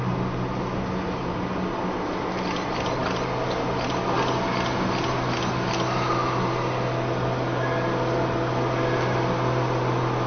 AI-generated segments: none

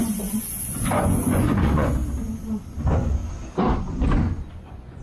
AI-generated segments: 0.0-2.0 (vocoder, Vocos); 2.8-3.2; 3.9-5.0

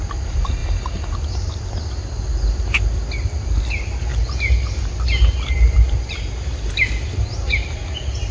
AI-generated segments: 4.1-7.9 (vocoder, BigVGAN v2)

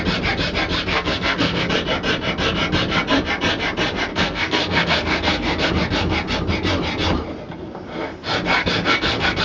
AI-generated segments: 0.9-1.7 (codec, SNAC); 4.1-5.7; 8.6-9.4